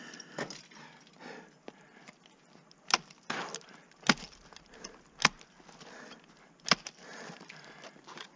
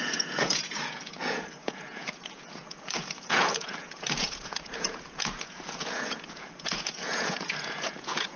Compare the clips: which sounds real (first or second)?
first